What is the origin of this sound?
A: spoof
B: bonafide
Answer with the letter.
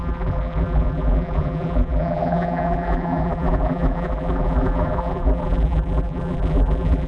A